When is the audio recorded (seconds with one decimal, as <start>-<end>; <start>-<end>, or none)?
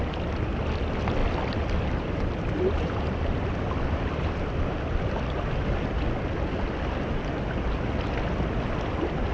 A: 0.0-1.2; 2.9-9.3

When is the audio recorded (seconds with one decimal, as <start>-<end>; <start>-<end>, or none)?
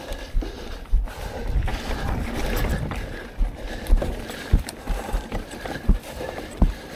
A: 1.7-4.2